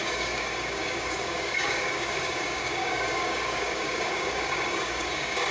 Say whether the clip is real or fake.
fake